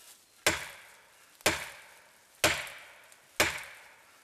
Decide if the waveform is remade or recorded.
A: recorded